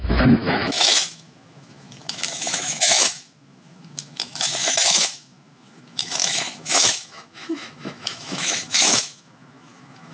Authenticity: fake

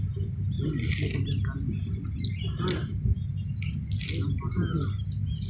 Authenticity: real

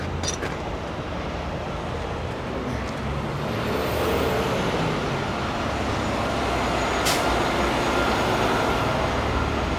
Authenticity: real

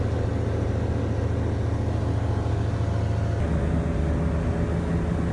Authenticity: real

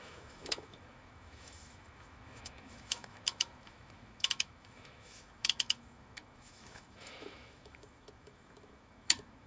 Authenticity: fake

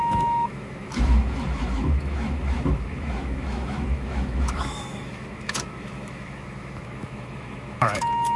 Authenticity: fake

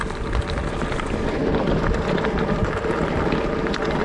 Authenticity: real